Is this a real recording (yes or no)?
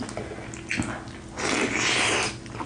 yes